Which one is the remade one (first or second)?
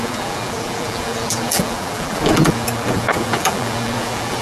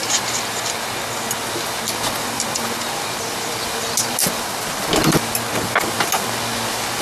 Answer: first